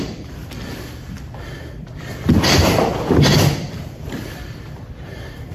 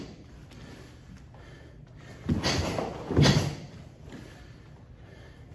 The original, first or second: second